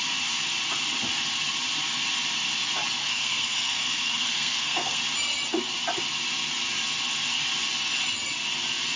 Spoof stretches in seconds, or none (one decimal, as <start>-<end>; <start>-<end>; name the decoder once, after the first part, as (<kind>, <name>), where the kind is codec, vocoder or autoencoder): 3.0-5.0 (codec, SNAC)